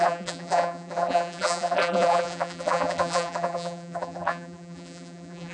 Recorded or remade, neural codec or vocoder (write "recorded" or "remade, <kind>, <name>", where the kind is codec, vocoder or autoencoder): remade, vocoder, BigVGAN v2